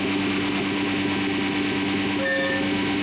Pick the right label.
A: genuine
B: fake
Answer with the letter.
A